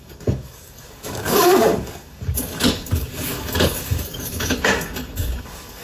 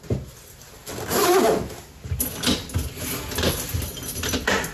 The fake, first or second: first